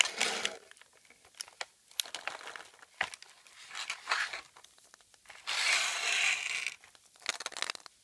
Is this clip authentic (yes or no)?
yes